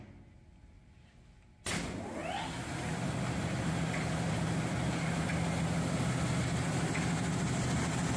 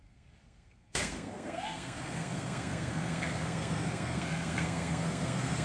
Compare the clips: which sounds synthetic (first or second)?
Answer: second